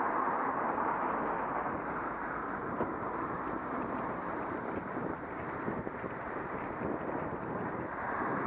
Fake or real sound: fake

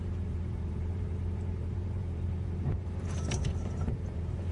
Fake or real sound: fake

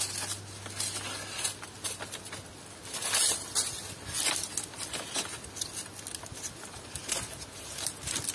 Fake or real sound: real